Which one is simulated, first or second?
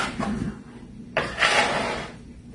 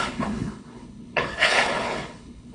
second